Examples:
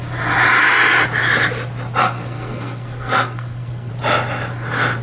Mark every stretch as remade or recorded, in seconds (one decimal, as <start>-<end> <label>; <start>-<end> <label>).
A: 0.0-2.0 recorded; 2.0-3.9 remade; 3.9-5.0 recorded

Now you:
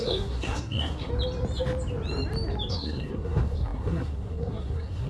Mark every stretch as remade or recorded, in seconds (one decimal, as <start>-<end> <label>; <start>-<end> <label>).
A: 0.0-1.1 remade; 1.1-2.7 recorded; 2.7-5.1 remade

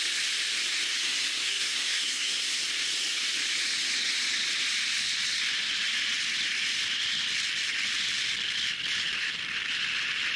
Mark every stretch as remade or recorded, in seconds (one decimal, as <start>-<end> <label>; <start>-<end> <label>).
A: 0.0-0.9 recorded; 0.9-2.6 remade; 2.6-10.4 recorded